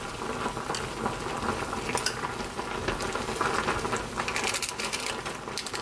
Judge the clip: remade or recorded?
recorded